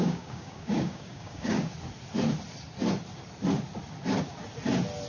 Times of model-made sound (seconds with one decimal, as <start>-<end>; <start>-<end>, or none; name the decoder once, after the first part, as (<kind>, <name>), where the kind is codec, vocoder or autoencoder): 0.0-1.7 (codec, DAC)